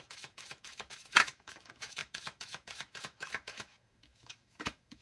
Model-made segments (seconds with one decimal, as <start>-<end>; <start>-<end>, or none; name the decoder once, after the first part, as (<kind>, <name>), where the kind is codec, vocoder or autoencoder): 0.0-5.0 (autoencoder, DAC-VAE)